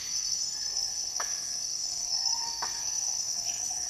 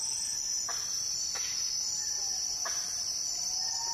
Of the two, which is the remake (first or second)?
first